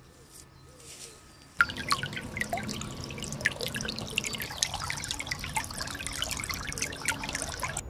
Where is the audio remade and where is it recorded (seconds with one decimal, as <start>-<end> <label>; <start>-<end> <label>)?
0.0-7.9 recorded